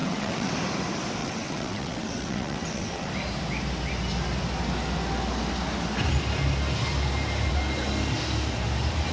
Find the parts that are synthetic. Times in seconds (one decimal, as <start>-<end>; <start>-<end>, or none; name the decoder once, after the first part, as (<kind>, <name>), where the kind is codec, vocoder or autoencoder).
0.0-0.5 (vocoder, WaveNeXt); 1.2-3.1